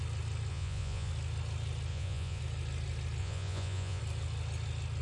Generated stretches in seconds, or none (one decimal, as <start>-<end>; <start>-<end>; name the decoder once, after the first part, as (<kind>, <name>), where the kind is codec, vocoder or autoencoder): 0.5-1.1 (vocoder, Vocos); 1.9-2.4; 3.2-4.0